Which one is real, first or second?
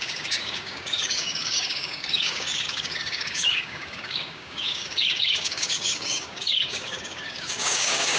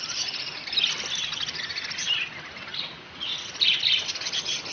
second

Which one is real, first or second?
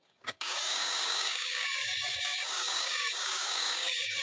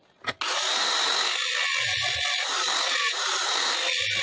second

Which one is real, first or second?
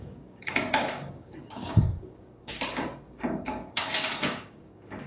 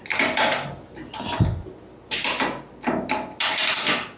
second